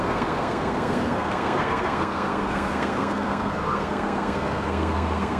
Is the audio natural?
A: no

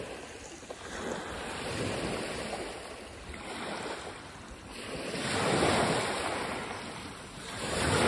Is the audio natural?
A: yes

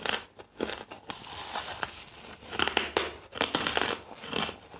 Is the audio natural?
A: yes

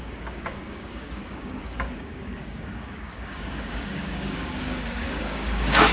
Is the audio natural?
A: no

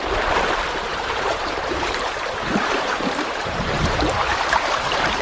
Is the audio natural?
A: no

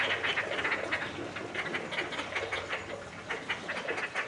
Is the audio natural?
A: yes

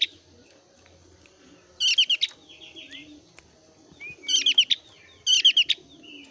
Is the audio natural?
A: yes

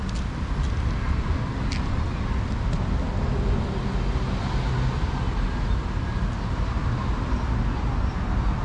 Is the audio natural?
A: yes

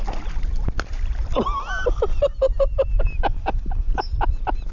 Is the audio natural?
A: yes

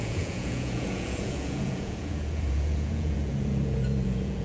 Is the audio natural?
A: no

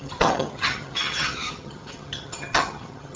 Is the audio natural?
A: no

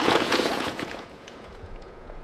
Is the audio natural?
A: no